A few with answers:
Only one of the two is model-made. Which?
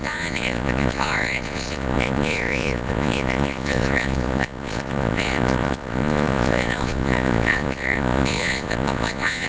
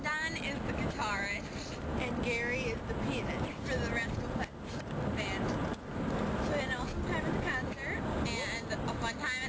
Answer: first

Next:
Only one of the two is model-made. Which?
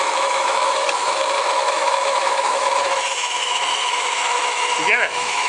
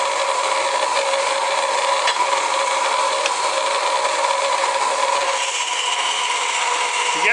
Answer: first